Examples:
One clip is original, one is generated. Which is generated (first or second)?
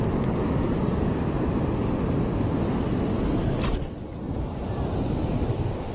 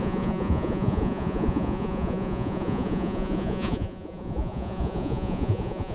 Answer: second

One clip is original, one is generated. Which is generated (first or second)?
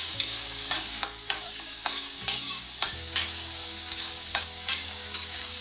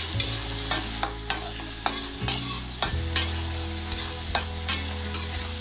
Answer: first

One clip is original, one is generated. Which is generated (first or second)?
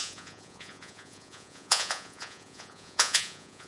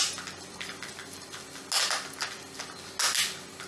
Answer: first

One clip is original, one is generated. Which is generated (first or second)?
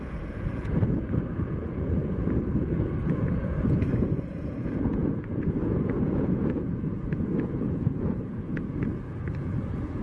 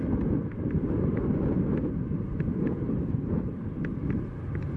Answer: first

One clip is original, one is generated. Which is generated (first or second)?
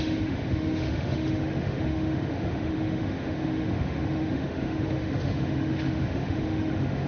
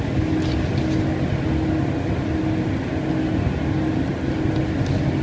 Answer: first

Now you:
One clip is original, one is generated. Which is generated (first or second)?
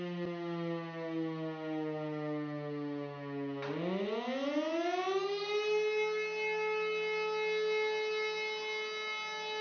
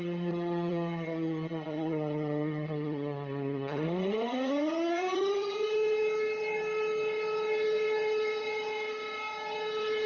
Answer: second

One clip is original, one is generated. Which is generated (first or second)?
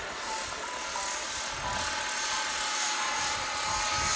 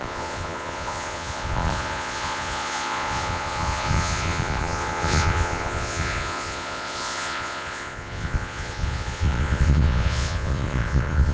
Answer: second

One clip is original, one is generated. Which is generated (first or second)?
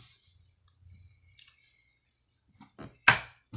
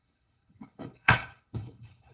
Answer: second